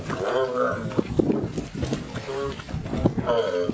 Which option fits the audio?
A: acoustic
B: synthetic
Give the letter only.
A